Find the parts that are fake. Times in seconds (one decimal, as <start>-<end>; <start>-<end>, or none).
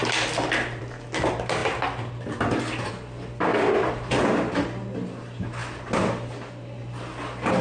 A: none